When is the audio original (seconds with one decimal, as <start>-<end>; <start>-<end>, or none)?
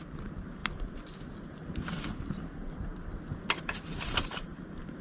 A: 0.6-3.6